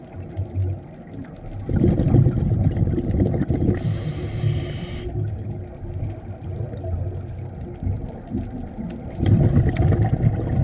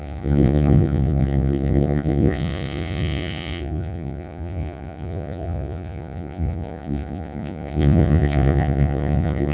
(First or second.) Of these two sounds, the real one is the first